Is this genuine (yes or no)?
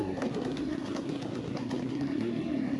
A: no